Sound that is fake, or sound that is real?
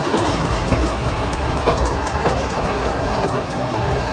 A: fake